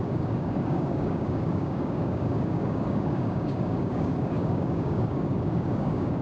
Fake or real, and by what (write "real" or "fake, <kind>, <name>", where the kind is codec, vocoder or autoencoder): fake, codec, DAC